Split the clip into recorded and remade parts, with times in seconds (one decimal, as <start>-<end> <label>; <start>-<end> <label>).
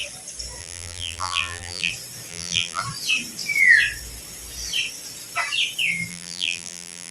0.0-0.6 recorded; 0.6-1.9 remade; 1.9-2.3 recorded; 2.3-2.8 remade; 2.8-6.1 recorded; 6.1-7.1 remade